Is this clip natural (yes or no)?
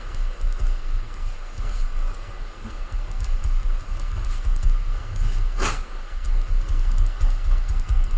no